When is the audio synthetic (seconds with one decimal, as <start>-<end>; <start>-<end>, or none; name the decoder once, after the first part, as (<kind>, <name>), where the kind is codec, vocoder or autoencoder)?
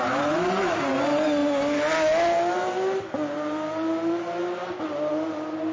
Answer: none